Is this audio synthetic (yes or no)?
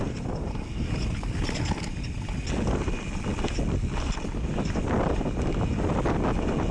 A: no